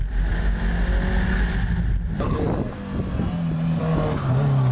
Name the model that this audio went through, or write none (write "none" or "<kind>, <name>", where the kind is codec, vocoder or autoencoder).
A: none